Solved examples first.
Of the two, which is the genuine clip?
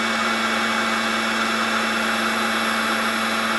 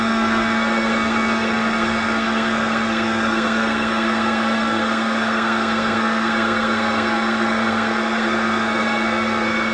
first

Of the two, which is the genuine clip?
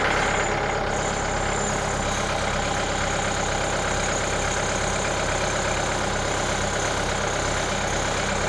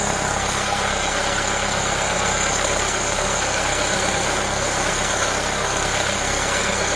first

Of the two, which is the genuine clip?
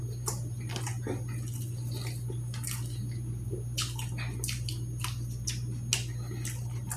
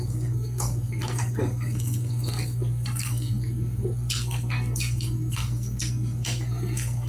first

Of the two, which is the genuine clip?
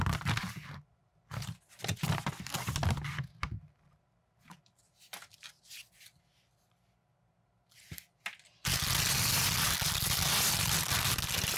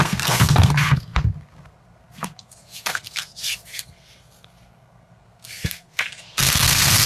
first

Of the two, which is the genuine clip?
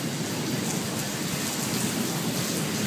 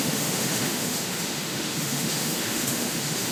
first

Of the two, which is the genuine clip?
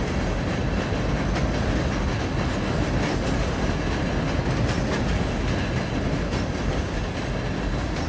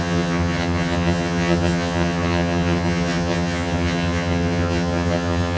first